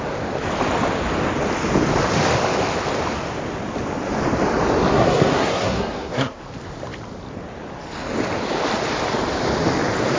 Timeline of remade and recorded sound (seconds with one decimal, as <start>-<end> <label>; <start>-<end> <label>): 0.0-4.9 recorded; 4.9-6.4 remade; 6.4-10.2 recorded